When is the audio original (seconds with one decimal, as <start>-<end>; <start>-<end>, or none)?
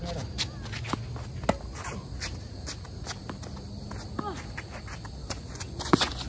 0.0-5.2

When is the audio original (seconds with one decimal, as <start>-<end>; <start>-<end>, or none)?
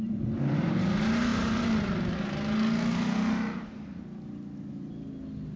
0.0-5.6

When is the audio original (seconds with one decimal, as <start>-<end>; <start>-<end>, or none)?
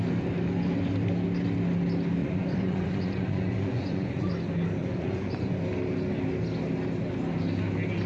0.0-2.2; 4.3-4.8; 5.6-8.1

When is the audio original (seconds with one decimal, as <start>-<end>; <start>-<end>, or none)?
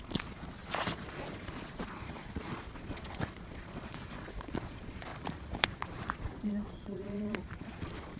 5.1-5.6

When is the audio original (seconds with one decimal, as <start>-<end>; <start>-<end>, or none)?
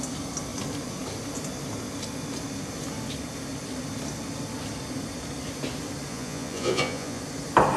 0.0-6.1; 7.2-7.8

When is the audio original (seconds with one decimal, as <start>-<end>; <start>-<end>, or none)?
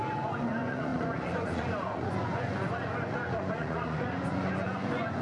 none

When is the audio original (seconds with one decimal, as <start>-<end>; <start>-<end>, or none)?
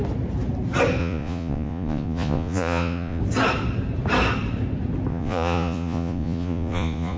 0.0-1.0; 3.2-5.1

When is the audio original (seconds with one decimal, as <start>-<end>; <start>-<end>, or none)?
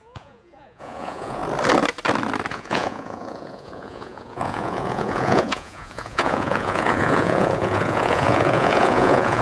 1.4-2.5